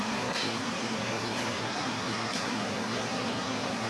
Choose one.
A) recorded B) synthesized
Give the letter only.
B